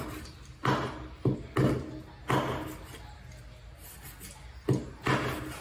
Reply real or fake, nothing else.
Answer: real